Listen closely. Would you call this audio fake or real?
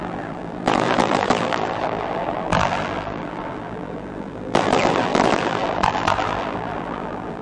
fake